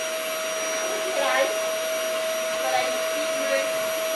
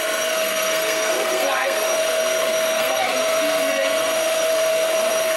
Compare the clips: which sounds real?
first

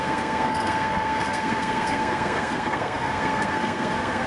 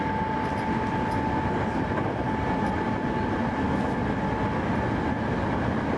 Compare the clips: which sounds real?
second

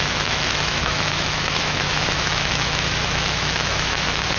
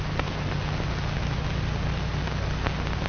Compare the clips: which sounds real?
second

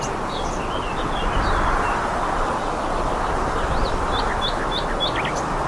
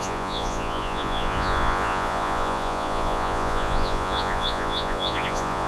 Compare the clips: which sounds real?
first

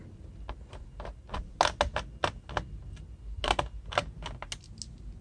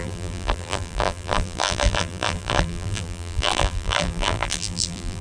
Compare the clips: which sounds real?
first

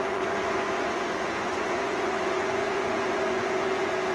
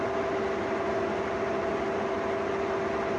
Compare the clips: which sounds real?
second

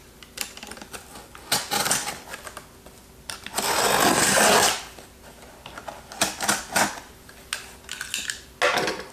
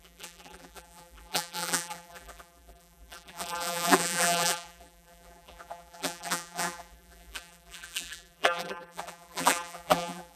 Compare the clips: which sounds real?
first